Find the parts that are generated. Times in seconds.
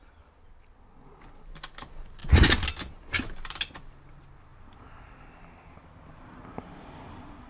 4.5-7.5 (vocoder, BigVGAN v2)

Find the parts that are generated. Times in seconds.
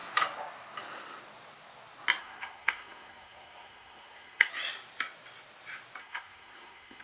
2.2-4.5 (codec, SNAC); 6.0-7.0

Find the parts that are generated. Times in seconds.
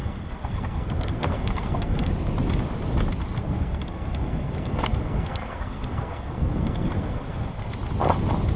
0.0-2.1 (codec, SNAC); 3.4-7.7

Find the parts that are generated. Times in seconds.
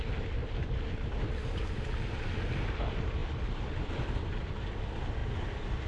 3.2-4.5 (vocoder, BigVGAN v2); 5.2-5.9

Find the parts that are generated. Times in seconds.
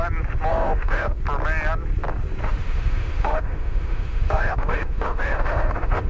0.5-1.2 (autoencoder, DAC-VAE); 2.4-6.1